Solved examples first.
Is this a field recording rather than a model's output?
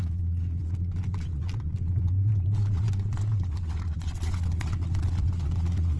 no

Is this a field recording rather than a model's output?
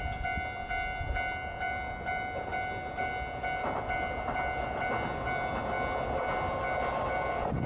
yes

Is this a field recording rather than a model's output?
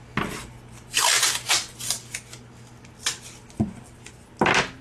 yes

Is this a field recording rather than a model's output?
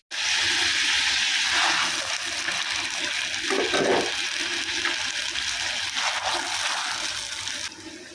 yes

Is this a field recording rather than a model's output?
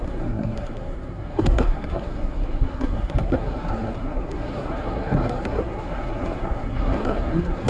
no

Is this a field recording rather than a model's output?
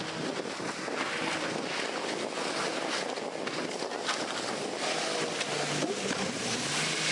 yes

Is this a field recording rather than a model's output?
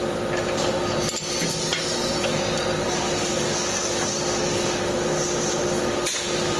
yes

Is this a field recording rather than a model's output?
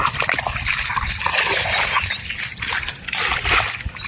yes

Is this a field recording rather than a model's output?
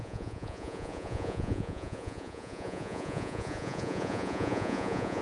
no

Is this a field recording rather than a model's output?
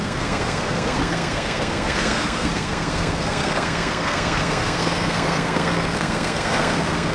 no